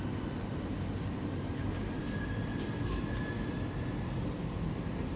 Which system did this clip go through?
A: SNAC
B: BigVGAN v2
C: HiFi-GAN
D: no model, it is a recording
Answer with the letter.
D